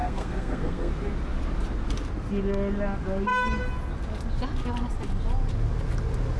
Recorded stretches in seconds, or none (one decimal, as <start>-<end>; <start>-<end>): 0.9-6.4